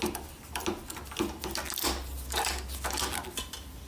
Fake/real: real